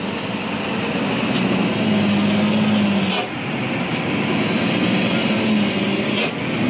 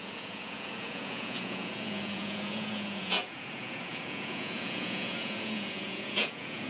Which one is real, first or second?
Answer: first